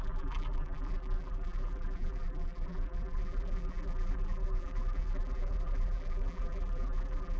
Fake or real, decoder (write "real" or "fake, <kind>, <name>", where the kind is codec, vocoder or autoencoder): fake, vocoder, BigVGAN v2